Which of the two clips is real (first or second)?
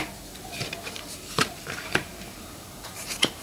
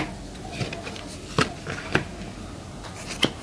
second